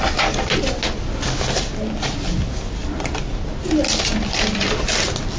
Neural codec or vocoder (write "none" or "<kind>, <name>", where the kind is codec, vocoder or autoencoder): none